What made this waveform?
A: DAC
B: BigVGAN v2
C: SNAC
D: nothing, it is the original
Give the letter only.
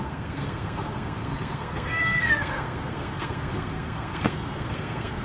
C